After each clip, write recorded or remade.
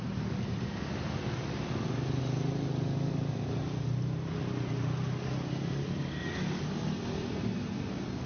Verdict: recorded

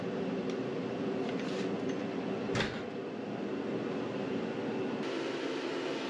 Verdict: recorded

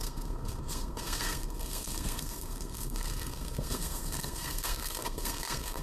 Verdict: remade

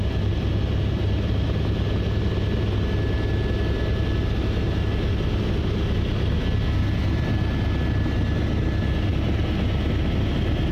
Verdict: recorded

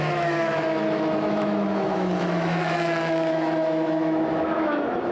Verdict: remade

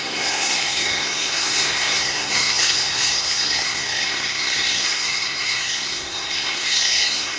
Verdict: remade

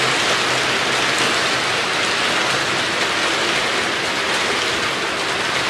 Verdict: recorded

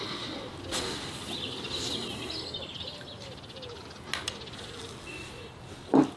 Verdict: recorded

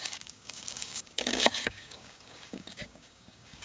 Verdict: remade